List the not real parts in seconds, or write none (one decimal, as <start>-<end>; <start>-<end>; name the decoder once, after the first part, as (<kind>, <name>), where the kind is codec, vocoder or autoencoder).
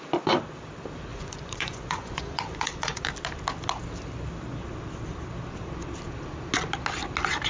1.1-3.1 (vocoder, Vocos)